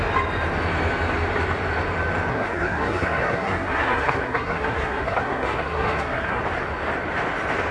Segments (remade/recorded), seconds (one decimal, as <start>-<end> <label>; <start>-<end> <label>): 0.0-2.3 recorded; 2.3-6.4 remade; 6.4-7.7 recorded